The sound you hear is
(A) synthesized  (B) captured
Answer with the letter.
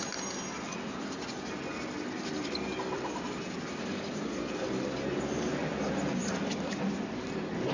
B